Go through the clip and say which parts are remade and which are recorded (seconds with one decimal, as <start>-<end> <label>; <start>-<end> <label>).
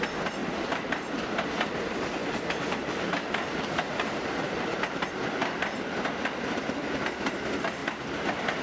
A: 0.0-0.4 recorded; 0.4-0.9 remade; 0.9-2.2 recorded; 2.2-4.9 remade; 4.9-8.6 recorded